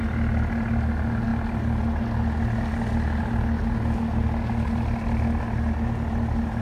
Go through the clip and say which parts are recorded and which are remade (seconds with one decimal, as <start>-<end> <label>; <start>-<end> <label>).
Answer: 0.0-6.6 recorded

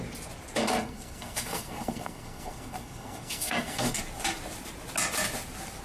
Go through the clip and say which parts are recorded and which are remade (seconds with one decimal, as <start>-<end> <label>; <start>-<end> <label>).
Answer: 0.0-0.6 recorded; 0.6-4.0 remade; 4.0-5.8 recorded